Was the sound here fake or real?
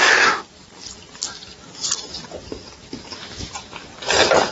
real